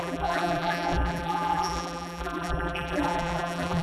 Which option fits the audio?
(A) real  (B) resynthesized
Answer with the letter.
B